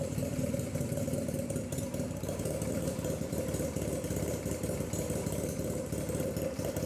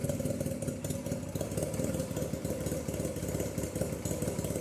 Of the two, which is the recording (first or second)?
second